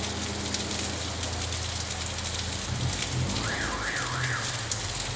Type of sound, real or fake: real